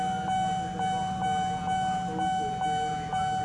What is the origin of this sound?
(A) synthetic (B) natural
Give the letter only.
B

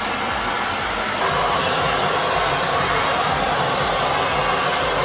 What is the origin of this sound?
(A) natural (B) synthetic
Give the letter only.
A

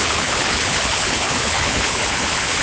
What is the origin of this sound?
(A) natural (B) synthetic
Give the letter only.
B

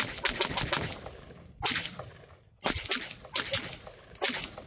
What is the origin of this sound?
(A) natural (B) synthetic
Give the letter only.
A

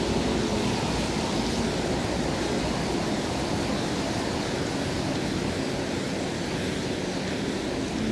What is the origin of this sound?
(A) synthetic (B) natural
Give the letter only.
B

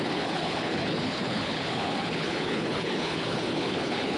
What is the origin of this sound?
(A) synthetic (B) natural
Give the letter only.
A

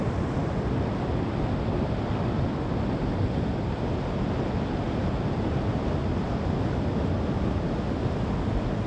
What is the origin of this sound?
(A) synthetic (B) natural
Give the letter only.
B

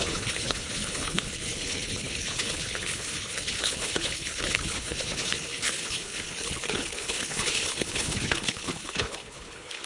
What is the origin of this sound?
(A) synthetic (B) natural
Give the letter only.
A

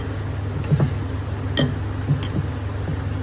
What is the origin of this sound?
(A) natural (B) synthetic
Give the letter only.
A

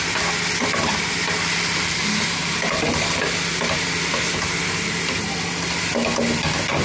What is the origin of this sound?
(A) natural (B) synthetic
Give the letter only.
A